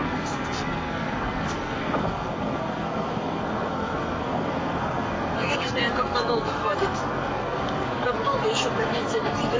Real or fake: fake